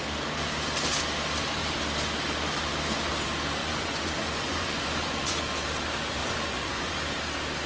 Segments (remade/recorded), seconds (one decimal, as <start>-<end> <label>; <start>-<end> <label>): 0.0-3.6 recorded; 3.6-5.4 remade; 5.4-6.2 recorded; 6.2-6.9 remade; 6.9-7.7 recorded

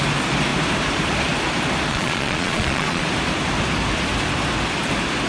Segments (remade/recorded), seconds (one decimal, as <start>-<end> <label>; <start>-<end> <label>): 0.0-1.9 recorded; 1.9-3.0 remade; 3.0-5.3 recorded

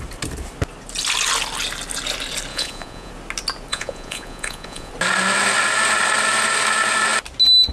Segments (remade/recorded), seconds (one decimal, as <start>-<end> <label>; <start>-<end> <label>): 0.0-2.5 recorded; 2.5-3.1 remade; 3.1-3.7 recorded; 3.7-4.9 remade; 4.9-7.7 recorded

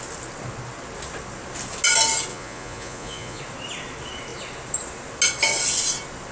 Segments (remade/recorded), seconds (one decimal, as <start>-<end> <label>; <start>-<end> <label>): 0.0-2.3 recorded; 2.3-3.4 remade; 3.4-6.3 recorded